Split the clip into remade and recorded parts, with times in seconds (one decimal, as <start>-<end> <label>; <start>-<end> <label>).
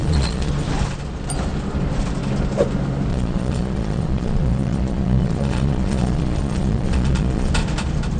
0.0-0.5 remade; 0.5-3.1 recorded; 3.1-7.5 remade; 7.5-8.2 recorded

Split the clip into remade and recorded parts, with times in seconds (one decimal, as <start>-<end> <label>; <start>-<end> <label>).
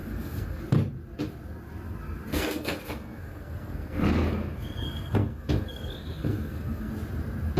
0.0-0.6 remade; 0.6-2.3 recorded; 2.3-6.9 remade; 6.9-7.6 recorded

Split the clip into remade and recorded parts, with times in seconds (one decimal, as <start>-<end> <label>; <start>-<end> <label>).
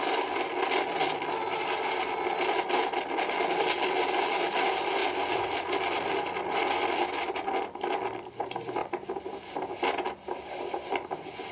0.0-11.5 recorded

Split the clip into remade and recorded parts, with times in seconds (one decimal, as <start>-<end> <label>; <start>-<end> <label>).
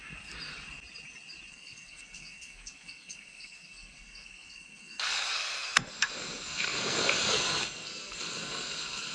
0.0-1.5 recorded; 1.5-9.1 remade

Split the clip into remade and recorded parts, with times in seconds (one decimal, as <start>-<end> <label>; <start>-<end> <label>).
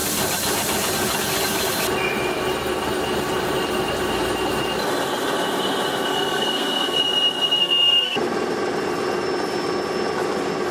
0.0-6.1 recorded; 6.1-7.0 remade; 7.0-7.6 recorded; 7.6-8.2 remade; 8.2-10.7 recorded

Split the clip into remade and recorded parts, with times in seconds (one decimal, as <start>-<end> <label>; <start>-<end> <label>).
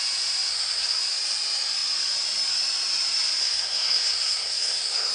0.0-0.5 recorded; 0.5-1.0 remade; 1.0-3.4 recorded; 3.4-5.1 remade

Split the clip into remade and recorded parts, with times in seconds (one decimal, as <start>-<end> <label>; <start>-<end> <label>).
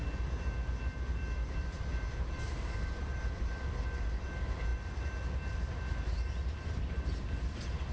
0.0-7.9 recorded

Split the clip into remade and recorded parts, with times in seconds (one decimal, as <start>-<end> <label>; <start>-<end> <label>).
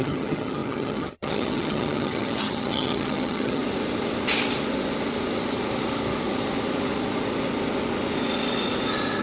0.0-3.6 remade; 3.6-9.2 recorded